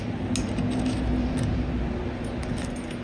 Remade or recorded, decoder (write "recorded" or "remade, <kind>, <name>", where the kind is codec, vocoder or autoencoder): recorded